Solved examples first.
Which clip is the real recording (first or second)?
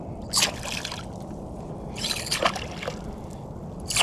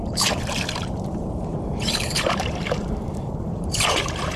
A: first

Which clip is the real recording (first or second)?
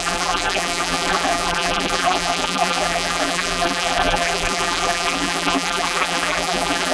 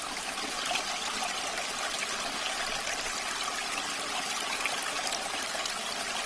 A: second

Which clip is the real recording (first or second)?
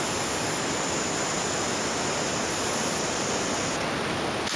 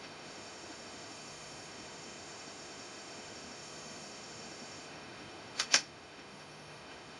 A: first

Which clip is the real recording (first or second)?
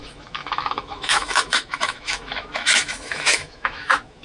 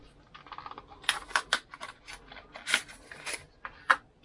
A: second